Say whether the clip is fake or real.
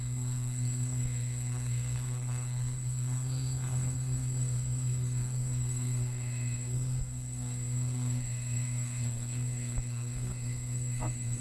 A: fake